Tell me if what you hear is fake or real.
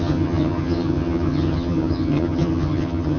fake